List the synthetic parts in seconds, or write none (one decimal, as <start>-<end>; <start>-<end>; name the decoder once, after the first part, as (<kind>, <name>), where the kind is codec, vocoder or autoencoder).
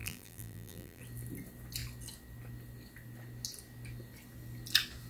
0.0-1.0 (vocoder, BigVGAN v2)